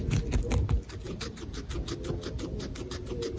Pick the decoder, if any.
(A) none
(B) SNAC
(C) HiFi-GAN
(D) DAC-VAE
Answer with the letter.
A